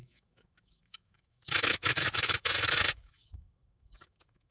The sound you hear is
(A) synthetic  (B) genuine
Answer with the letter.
A